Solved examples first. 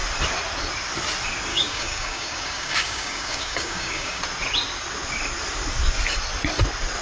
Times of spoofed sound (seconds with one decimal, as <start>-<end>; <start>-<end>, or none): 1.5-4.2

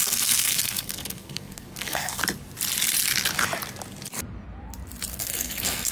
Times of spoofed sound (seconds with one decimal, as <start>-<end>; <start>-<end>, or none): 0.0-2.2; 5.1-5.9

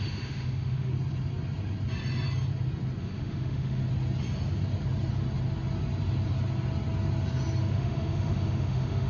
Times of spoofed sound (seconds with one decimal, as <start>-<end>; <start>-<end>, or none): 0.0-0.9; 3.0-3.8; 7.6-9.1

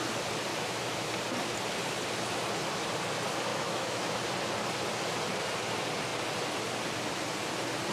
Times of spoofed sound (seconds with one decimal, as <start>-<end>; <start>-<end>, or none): 0.5-1.1; 3.5-4.2